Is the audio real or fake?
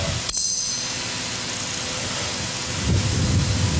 real